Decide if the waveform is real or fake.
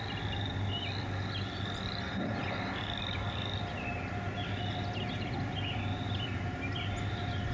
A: real